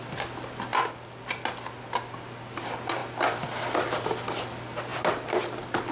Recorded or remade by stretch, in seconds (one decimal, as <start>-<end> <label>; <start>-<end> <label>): 0.0-5.9 recorded